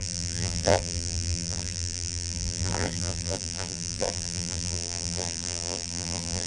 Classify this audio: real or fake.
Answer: fake